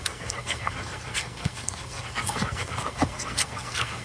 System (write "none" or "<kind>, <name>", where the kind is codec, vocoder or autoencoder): codec, SNAC